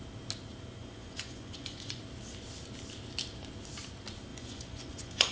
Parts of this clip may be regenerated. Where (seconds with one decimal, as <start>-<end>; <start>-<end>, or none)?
0.8-2.0; 4.3-5.3